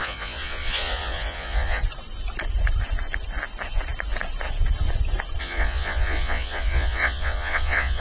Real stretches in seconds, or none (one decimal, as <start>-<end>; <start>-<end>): 1.8-5.4